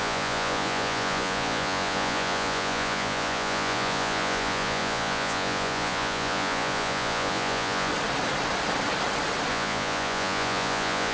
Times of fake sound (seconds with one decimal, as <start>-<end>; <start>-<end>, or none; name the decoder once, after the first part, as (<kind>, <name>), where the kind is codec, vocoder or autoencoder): 0.0-7.9 (vocoder, Vocos); 9.5-11.1